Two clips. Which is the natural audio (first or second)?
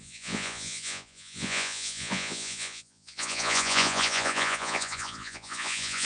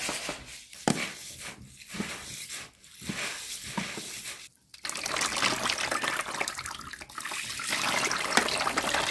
second